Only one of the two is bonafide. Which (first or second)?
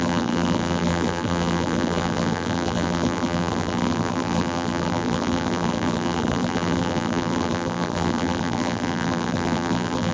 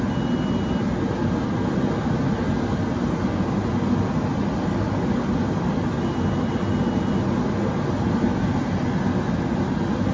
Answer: second